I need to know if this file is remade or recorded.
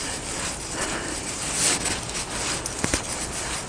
recorded